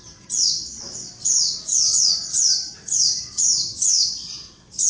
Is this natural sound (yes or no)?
no